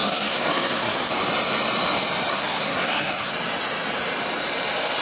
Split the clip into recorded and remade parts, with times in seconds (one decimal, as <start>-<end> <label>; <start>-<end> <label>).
0.0-1.1 remade; 1.1-2.3 recorded; 2.3-3.3 remade; 3.3-5.0 recorded